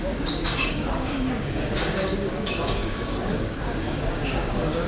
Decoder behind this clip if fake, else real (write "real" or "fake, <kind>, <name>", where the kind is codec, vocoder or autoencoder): fake, codec, DAC